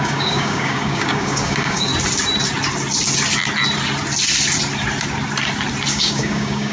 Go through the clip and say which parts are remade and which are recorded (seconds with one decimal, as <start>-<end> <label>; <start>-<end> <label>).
0.0-1.9 remade; 1.9-5.9 recorded; 5.9-6.7 remade